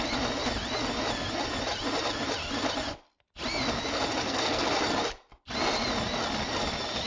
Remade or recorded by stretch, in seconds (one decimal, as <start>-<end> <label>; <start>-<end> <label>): 0.0-4.2 recorded; 4.2-4.7 remade; 4.7-7.1 recorded